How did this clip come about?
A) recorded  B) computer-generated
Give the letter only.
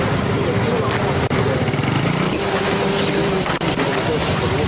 A